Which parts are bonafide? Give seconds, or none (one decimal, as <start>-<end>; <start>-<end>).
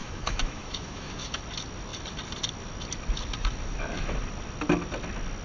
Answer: 1.4-5.4